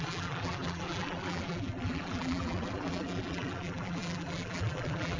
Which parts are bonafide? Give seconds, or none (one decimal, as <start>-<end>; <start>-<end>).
none